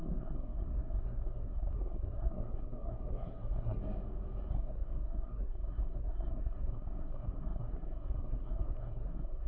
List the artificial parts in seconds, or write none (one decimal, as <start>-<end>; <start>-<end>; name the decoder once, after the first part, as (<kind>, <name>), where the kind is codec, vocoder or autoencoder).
0.0-3.8 (codec, SNAC); 4.5-9.5